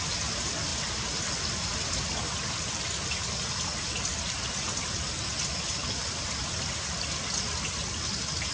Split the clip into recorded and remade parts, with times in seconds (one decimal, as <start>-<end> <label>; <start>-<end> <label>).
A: 0.0-8.5 recorded